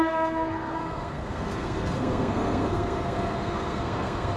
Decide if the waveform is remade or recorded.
remade